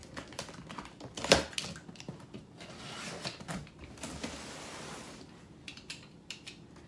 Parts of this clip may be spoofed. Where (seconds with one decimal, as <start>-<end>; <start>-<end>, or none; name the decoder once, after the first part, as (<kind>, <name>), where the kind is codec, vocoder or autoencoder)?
none